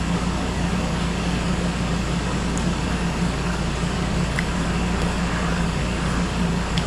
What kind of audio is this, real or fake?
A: fake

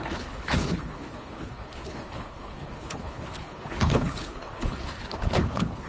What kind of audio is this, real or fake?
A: fake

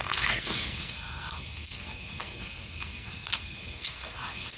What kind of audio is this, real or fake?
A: fake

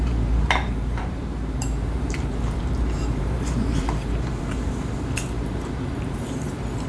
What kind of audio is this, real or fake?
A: fake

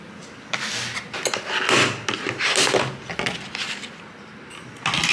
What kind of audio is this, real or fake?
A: real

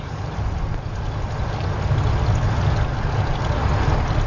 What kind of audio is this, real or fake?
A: real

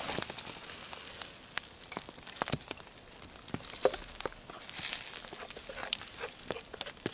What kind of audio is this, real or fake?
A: real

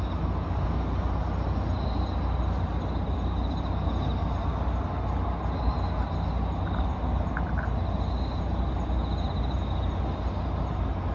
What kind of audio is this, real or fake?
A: real